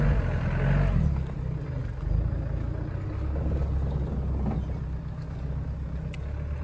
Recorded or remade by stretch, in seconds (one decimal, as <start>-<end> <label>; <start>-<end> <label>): 0.0-6.6 recorded